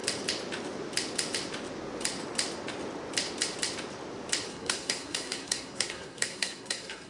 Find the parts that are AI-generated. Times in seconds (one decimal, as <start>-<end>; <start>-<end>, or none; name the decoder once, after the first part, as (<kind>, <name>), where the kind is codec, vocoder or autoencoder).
4.5-7.1 (codec, SNAC)